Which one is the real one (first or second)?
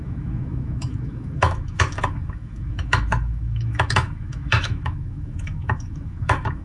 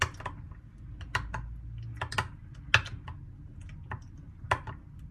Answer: second